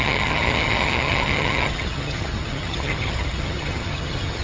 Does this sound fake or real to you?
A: fake